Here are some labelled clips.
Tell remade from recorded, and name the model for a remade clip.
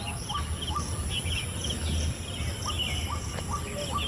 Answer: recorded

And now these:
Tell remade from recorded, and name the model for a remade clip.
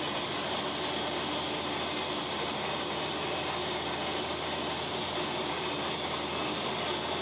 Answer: recorded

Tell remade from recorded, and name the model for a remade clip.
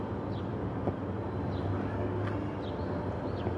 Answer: recorded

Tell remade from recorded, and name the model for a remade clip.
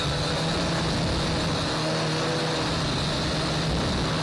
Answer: recorded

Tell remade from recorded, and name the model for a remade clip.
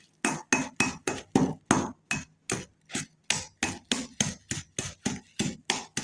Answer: recorded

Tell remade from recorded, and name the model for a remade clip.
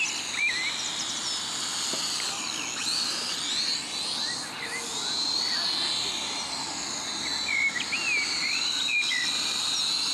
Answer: recorded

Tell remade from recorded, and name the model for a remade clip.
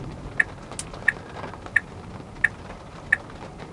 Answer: recorded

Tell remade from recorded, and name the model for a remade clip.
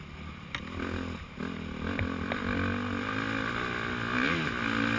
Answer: recorded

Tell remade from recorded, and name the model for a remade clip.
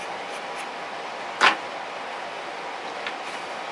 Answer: recorded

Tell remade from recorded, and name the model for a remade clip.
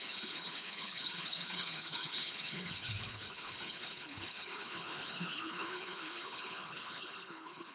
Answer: remade, codec, HILCodec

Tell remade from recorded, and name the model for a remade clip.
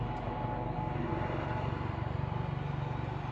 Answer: recorded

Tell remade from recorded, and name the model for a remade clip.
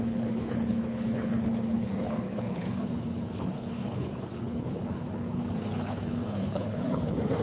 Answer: remade, codec, HILCodec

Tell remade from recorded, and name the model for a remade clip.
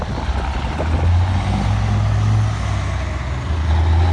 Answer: recorded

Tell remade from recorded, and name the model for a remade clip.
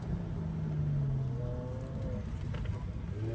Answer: recorded